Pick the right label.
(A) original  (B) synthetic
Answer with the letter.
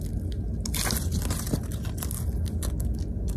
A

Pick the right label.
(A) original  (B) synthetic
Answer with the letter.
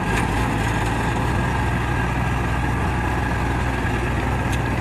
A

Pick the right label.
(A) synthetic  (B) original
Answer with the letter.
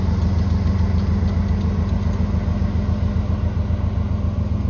B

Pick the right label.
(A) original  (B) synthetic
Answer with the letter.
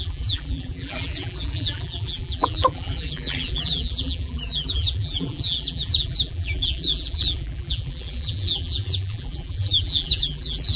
B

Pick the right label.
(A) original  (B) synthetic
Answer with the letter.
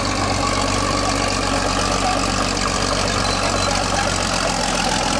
A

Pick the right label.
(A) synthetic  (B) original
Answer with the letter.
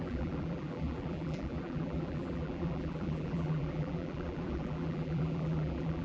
A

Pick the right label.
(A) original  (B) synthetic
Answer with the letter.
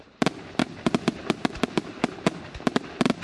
B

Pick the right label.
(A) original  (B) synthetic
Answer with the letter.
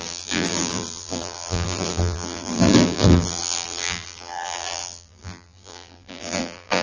B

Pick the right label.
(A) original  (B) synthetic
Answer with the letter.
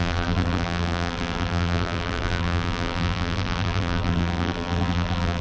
B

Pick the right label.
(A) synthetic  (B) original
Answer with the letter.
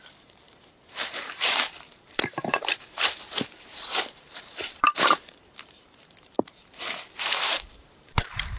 A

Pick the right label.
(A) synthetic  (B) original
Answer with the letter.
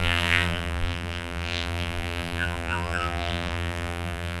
A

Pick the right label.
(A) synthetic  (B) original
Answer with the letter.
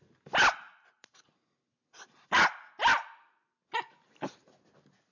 B